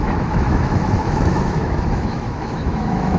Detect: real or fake fake